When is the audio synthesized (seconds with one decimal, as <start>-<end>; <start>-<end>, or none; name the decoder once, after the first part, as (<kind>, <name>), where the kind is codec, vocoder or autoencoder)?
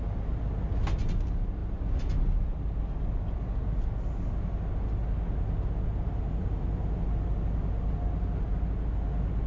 none